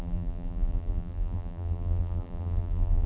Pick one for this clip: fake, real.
fake